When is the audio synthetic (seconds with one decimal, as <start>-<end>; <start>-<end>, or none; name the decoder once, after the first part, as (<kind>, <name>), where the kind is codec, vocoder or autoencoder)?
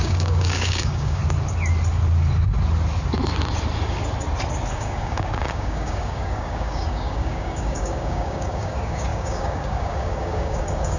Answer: 0.0-1.2 (codec, DAC); 4.7-11.0